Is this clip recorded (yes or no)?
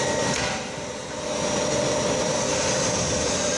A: yes